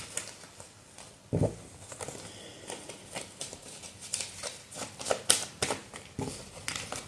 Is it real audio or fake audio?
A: real